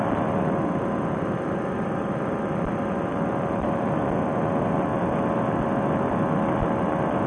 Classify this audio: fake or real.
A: real